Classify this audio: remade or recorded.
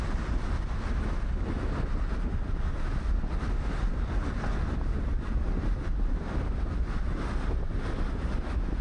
recorded